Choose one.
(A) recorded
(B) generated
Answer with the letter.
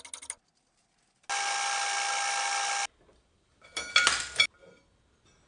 A